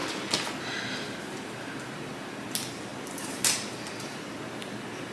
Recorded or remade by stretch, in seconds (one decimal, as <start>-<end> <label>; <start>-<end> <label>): 0.0-5.1 recorded